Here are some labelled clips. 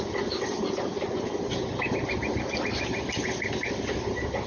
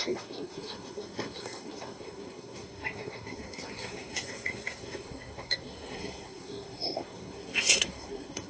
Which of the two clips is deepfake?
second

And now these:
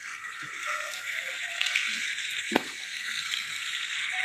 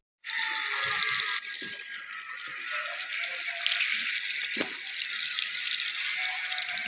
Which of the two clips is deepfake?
first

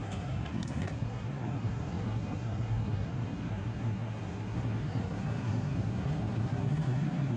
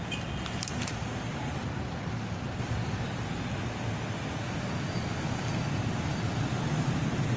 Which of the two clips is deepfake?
first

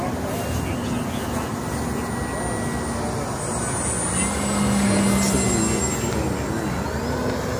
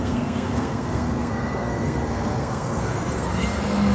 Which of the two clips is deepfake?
second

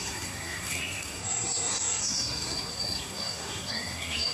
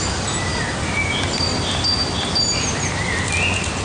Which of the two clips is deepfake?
first